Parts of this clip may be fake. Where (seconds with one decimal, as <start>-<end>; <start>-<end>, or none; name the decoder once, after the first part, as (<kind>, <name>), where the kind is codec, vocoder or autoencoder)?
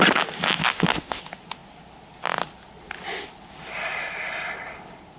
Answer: 0.6-1.2 (autoencoder, DAC-VAE)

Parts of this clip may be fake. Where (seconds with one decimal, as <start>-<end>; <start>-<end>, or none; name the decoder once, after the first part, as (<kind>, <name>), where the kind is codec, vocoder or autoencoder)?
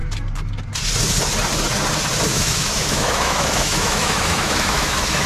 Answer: 2.3-5.3 (autoencoder, DAC-VAE)